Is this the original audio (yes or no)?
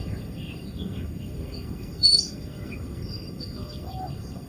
no